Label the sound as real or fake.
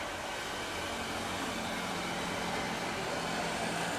real